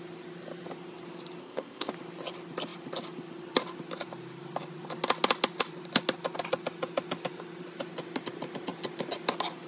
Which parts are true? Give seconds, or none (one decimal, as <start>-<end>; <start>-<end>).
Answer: 0.0-1.4; 1.9-9.7